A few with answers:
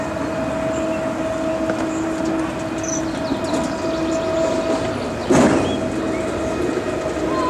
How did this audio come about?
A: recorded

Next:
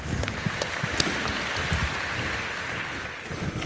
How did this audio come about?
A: recorded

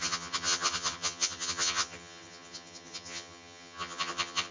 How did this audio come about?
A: remade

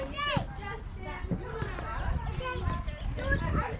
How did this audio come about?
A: recorded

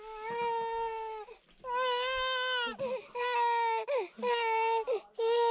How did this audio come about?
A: recorded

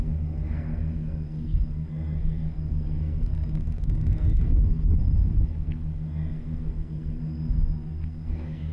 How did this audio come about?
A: remade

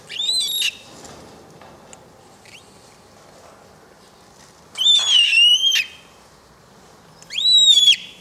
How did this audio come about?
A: recorded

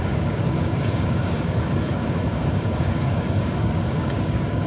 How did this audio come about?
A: remade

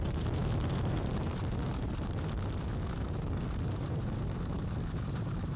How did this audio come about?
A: remade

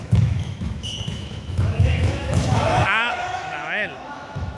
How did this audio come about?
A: remade